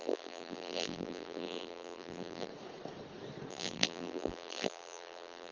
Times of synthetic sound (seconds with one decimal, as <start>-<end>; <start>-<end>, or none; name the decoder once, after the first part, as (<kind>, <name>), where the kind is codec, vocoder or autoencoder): 0.0-2.5 (vocoder, BigVGAN v2); 3.5-5.5